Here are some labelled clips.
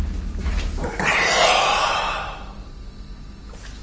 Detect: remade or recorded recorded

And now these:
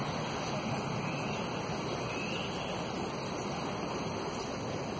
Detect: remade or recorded recorded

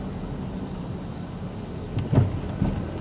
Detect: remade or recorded recorded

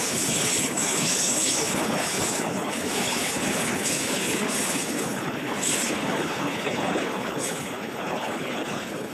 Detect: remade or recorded remade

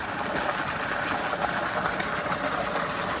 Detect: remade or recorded recorded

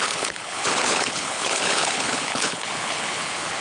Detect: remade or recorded remade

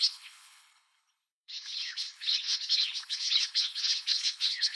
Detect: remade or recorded remade